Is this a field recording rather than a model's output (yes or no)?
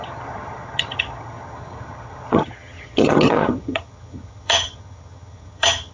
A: no